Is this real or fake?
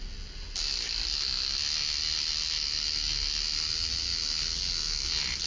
real